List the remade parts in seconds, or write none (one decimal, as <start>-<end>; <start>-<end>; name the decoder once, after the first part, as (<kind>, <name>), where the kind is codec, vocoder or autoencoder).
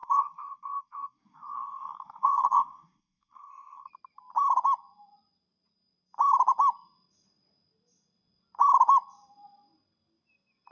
0.0-3.9 (codec, SNAC)